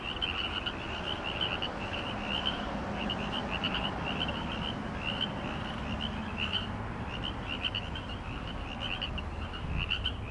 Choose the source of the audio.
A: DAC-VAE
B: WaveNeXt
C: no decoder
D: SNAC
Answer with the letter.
C